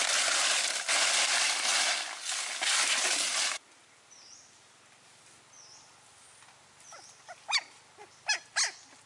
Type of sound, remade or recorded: recorded